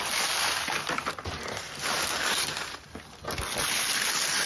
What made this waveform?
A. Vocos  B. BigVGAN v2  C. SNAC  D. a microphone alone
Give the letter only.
D